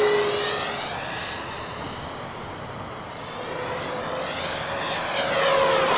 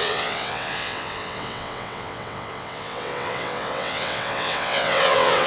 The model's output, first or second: second